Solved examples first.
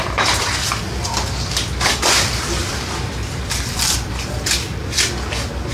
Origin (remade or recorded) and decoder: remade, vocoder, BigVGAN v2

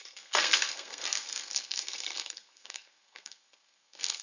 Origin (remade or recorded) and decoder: remade, codec, SNAC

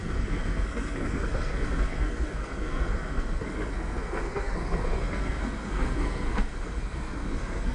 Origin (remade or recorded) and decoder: remade, codec, SNAC